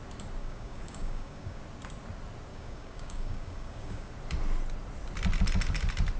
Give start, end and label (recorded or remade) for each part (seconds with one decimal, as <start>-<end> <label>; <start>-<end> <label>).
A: 0.0-0.4 recorded; 0.4-1.6 remade; 1.6-2.5 recorded; 2.5-4.1 remade; 4.1-6.2 recorded